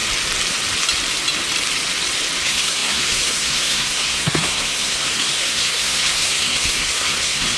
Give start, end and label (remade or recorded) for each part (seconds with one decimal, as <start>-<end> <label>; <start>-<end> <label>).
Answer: 0.0-2.4 recorded; 2.4-7.6 remade